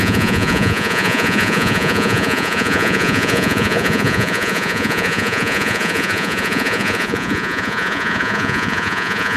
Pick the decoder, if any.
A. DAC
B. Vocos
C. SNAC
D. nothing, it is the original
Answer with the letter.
B